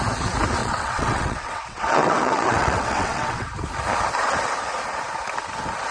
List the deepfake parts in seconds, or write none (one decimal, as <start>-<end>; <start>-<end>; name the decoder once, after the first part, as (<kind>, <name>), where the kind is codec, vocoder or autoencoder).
0.6-3.5 (vocoder, WaveNeXt)